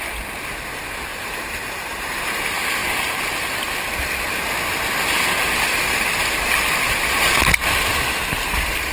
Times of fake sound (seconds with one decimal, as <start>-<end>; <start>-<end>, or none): 1.1-2.4